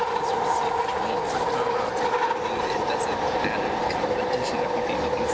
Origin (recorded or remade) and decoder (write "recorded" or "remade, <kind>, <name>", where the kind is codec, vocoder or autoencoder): recorded